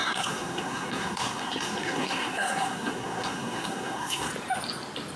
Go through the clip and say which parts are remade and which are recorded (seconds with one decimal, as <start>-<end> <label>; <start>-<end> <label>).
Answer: 0.0-4.3 remade; 4.3-5.2 recorded